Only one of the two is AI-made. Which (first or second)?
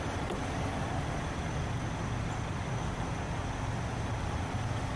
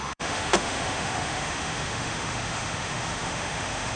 second